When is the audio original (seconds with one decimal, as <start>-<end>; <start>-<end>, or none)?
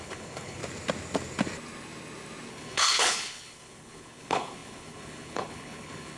0.6-2.5